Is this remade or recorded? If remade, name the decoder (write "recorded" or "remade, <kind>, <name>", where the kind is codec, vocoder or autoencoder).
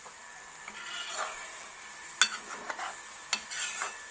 recorded